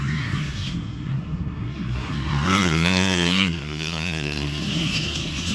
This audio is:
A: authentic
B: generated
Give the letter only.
B